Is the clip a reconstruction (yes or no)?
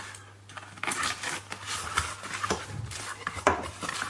no